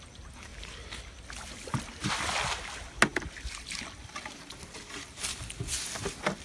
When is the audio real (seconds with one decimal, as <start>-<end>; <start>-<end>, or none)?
0.0-3.1; 5.6-6.4